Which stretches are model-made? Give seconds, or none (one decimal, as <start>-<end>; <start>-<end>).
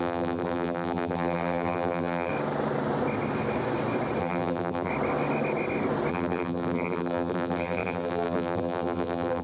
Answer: 0.0-2.3; 4.2-4.9; 6.1-9.4